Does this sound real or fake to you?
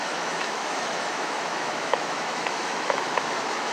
fake